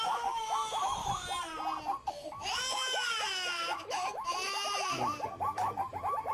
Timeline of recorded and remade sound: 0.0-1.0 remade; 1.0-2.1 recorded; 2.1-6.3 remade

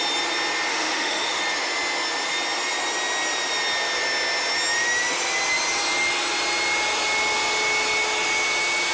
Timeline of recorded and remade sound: 0.0-0.7 recorded; 0.7-1.4 remade; 1.4-8.9 recorded

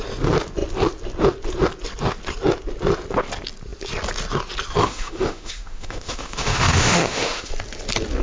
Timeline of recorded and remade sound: 0.0-4.8 recorded; 4.8-7.5 remade; 7.5-8.2 recorded

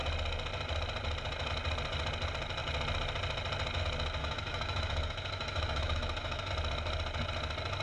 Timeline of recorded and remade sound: 0.0-4.2 recorded; 4.2-6.5 remade; 6.5-7.8 recorded

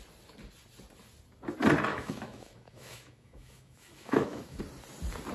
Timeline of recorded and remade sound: 0.0-1.9 recorded; 1.9-4.6 remade; 4.6-5.3 recorded